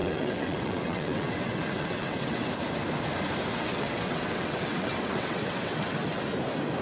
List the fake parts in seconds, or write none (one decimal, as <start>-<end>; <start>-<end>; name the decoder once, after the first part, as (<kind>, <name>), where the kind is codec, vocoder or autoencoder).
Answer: 0.0-2.5 (vocoder, WaveNeXt); 3.5-6.2